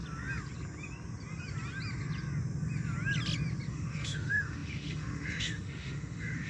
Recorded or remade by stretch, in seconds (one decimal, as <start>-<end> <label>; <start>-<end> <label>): 0.0-3.7 recorded; 3.7-6.5 remade